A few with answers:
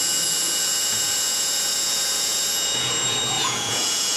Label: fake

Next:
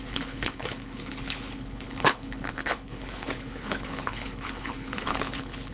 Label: fake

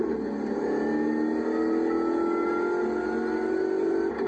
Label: real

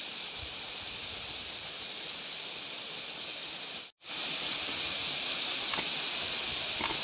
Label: real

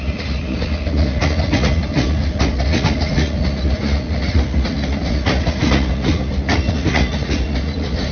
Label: fake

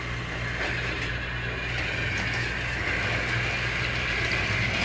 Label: real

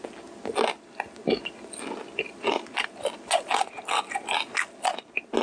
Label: real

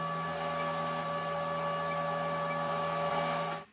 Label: real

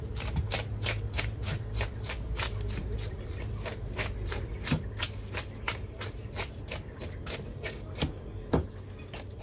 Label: fake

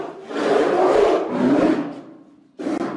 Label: real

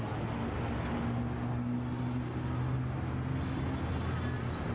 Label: real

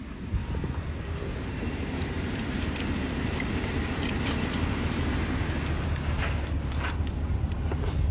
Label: fake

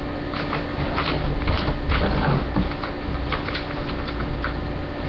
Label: real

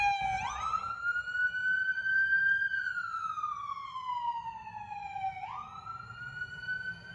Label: real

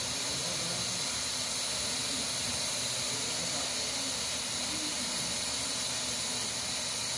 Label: real